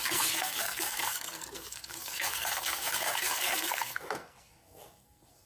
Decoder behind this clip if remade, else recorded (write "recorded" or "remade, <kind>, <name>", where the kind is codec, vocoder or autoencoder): remade, codec, SNAC